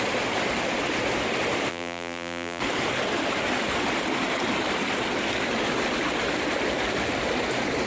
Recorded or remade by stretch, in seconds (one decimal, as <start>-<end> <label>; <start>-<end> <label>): 0.0-1.7 recorded; 1.7-2.6 remade; 2.6-7.9 recorded